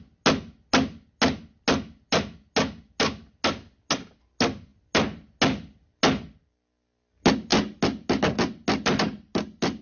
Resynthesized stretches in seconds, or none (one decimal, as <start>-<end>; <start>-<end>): none